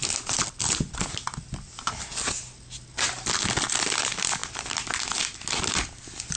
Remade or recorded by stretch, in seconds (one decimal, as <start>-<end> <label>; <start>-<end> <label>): 0.0-6.4 recorded